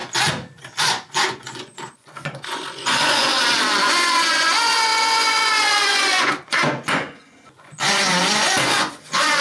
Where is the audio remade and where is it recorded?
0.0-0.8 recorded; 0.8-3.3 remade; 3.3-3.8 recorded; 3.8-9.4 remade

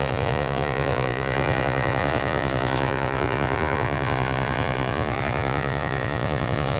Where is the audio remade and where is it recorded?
0.0-6.8 remade

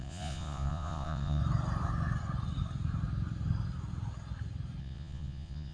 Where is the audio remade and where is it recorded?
0.0-1.4 remade; 1.4-4.8 recorded; 4.8-5.7 remade